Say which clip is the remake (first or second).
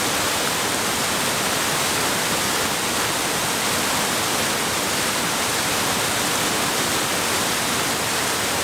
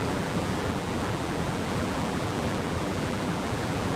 second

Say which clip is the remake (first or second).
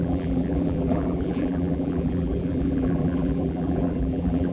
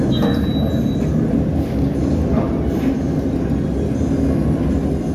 first